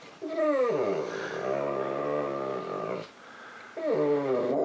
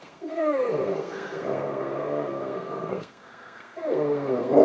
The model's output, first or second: second